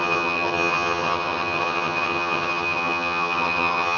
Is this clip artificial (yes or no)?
yes